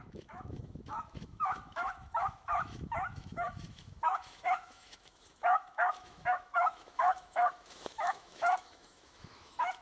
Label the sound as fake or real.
fake